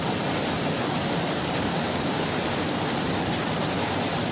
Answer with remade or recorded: remade